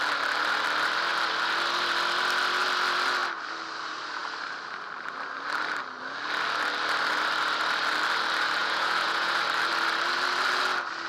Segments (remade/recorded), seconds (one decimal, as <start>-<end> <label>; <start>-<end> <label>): 0.0-8.6 recorded; 8.6-9.4 remade; 9.4-11.1 recorded